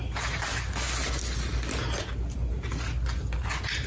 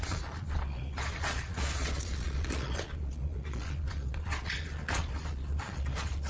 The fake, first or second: second